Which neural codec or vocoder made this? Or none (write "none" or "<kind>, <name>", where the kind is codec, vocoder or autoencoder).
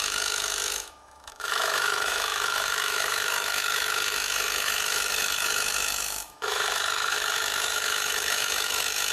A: autoencoder, DAC-VAE